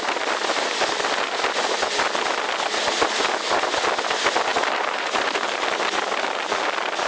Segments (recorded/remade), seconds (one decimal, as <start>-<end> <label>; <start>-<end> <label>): 0.0-4.5 recorded; 4.5-5.7 remade; 5.7-7.1 recorded